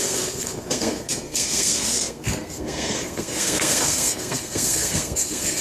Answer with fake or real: fake